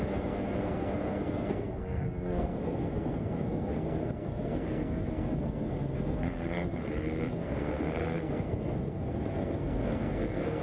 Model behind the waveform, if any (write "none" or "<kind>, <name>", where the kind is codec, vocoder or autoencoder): codec, SNAC